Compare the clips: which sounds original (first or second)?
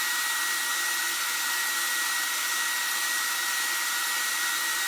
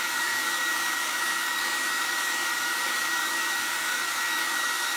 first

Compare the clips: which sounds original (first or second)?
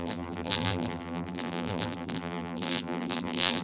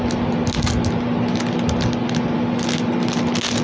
second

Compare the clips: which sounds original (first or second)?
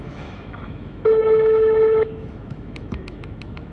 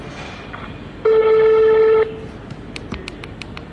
second